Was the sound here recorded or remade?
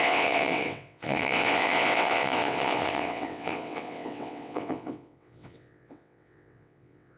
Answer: remade